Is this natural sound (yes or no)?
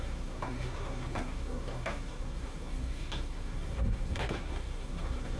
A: no